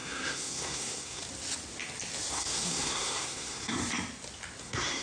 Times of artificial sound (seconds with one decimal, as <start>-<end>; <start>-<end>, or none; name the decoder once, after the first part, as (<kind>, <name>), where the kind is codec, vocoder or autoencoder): 0.0-1.2 (codec, SNAC); 2.3-3.8; 4.6-5.0